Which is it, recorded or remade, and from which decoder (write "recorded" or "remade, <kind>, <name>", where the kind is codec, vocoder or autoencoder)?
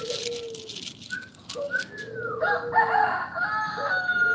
recorded